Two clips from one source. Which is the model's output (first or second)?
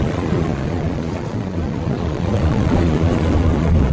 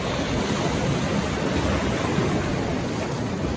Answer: first